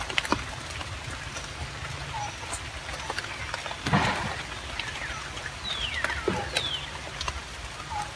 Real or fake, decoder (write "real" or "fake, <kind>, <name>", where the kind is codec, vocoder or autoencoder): real